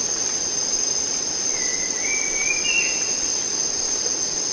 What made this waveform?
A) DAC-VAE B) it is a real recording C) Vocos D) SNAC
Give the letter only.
B